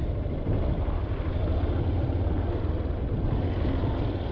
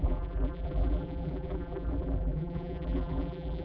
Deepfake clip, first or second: second